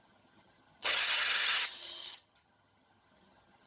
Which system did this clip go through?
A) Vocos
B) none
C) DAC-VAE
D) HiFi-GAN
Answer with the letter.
D